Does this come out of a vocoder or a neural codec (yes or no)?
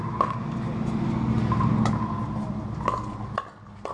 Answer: no